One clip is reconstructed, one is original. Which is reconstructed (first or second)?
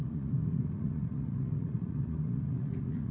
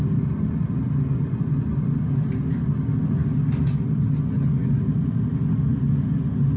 first